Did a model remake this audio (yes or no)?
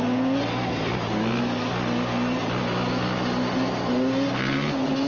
no